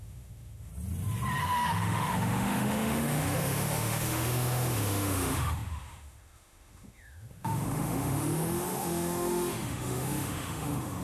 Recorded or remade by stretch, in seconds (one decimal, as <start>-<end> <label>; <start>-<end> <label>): 0.0-0.7 remade; 0.7-1.4 recorded; 1.4-11.0 remade